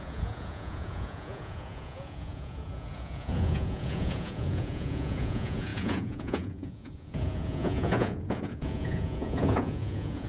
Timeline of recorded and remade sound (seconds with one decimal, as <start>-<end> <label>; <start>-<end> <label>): 0.0-10.3 remade